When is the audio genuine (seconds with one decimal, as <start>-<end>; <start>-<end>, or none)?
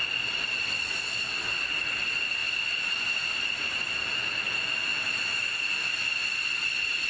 0.0-7.1